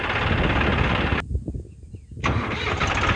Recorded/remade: recorded